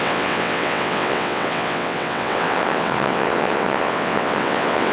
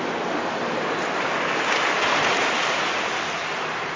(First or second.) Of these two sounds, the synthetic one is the first